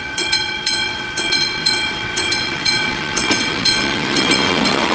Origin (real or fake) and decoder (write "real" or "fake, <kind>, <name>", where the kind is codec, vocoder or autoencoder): fake, vocoder, WaveNeXt